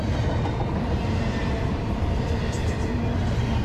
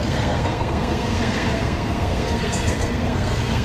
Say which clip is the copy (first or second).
second